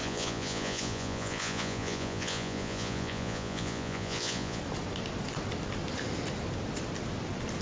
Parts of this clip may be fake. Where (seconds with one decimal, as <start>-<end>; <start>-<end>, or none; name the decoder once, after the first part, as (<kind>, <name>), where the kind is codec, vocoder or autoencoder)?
0.0-4.6 (vocoder, Vocos)